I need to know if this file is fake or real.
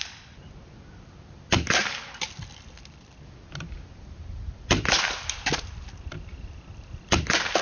real